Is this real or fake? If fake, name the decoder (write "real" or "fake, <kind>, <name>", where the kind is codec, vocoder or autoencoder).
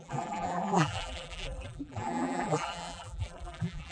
fake, vocoder, BigVGAN v2